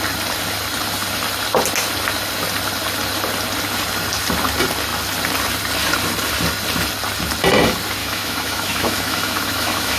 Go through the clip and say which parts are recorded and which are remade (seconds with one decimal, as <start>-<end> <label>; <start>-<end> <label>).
0.0-8.0 recorded; 8.0-10.0 remade